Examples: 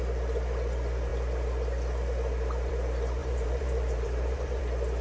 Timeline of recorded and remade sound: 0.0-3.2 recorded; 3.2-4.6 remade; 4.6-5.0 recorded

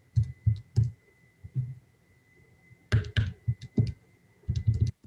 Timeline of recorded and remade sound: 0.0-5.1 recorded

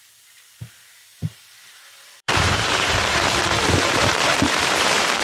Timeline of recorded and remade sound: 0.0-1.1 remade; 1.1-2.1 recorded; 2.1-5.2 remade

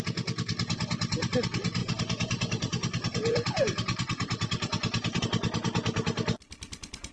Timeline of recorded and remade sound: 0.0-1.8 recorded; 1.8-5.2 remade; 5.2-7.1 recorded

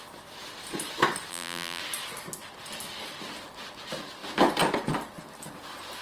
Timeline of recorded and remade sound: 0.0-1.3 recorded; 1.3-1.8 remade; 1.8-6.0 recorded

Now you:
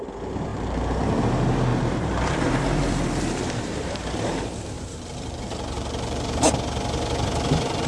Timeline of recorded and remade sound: 0.0-0.5 recorded; 0.5-1.1 remade; 1.1-1.7 recorded; 1.7-6.4 remade; 6.4-7.9 recorded

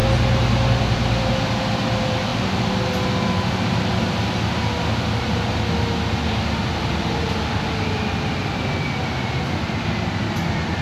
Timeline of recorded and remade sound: 0.0-1.3 remade; 1.3-10.8 recorded